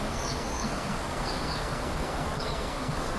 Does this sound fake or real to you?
fake